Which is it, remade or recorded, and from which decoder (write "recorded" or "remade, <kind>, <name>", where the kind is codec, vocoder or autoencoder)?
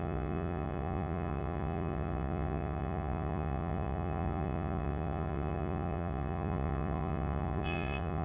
remade, vocoder, Vocos